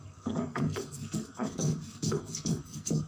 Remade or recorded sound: remade